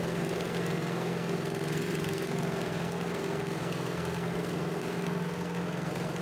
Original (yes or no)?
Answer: no